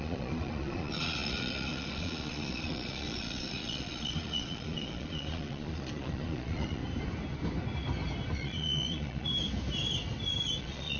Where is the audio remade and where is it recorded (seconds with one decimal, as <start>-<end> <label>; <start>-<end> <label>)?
0.0-6.8 remade; 6.8-8.3 recorded; 8.3-9.3 remade; 9.3-10.6 recorded; 10.6-11.0 remade